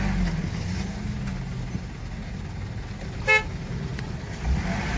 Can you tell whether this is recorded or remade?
recorded